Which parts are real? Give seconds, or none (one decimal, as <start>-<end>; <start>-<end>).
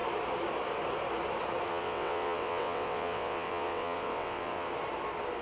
0.0-1.7; 4.7-5.4